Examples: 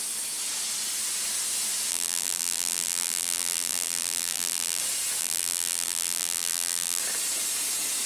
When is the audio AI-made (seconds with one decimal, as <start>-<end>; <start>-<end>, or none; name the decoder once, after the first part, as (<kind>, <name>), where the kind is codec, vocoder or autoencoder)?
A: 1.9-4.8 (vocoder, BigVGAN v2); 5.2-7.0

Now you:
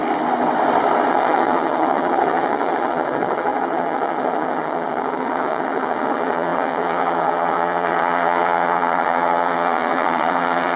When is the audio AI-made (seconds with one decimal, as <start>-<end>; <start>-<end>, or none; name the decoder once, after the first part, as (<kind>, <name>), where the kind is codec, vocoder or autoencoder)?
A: 1.1-10.8 (vocoder, WaveNeXt)

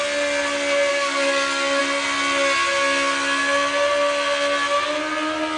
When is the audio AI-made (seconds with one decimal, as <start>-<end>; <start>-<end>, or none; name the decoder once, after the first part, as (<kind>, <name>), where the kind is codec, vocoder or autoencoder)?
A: 0.9-1.8 (codec, DAC)